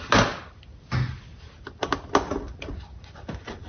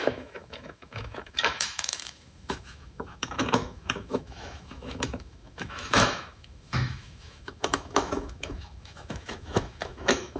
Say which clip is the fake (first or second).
second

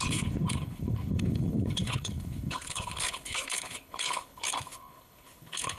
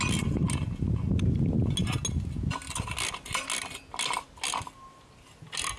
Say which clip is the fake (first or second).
first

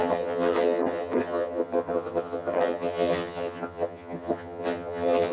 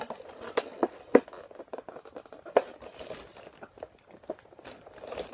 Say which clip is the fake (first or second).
first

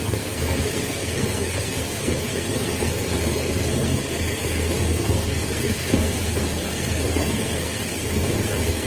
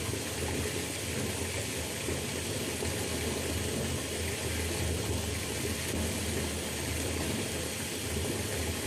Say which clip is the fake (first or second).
first